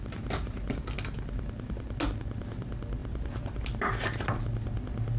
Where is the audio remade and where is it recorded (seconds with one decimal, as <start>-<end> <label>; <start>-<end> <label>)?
0.0-3.0 recorded; 3.0-3.6 remade; 3.6-5.2 recorded